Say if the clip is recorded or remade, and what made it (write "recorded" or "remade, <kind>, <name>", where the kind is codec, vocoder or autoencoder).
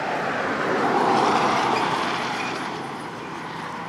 remade, vocoder, BigVGAN v2